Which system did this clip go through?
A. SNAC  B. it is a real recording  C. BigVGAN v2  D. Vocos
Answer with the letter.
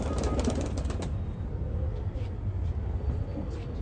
B